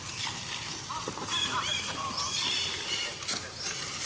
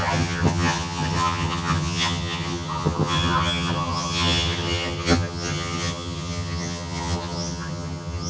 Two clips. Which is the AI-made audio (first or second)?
second